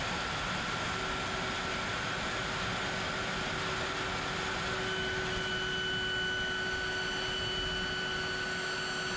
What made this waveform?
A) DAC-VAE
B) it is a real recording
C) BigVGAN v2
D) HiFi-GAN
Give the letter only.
B